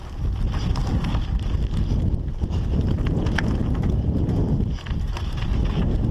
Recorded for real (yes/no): yes